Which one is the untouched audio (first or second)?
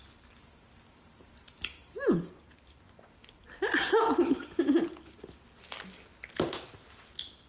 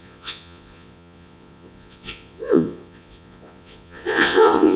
first